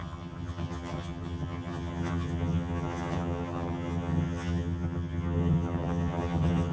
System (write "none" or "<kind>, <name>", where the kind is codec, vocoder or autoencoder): vocoder, HiFi-GAN